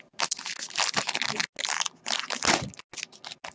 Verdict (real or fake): real